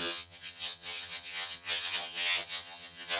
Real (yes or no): no